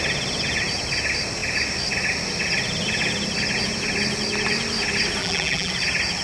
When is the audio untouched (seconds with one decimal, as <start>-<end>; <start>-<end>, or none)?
0.0-5.2; 5.7-6.2